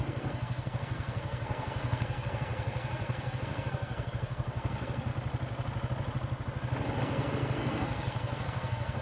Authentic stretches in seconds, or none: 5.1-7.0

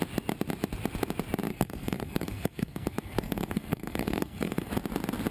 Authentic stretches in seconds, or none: 0.0-1.5; 4.7-5.3

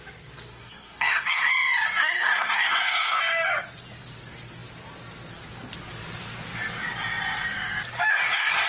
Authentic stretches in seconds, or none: 0.0-0.5; 1.5-2.0; 3.2-8.1